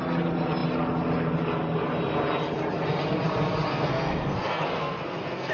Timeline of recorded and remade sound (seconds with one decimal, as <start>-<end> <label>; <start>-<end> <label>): 0.0-3.7 recorded; 3.7-5.5 remade